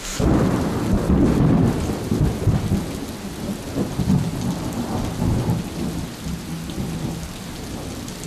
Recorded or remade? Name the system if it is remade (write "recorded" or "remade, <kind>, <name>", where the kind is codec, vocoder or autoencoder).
recorded